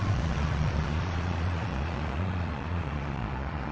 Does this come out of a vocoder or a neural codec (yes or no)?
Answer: yes